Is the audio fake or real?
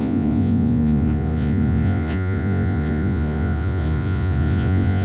fake